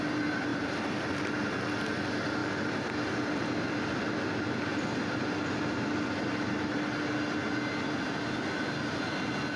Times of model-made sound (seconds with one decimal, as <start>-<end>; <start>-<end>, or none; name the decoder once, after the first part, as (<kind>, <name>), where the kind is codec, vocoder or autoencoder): 0.5-1.2 (vocoder, BigVGAN v2)